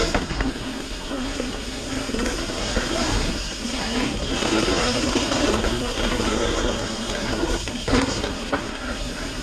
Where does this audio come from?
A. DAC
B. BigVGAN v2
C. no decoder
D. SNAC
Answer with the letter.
D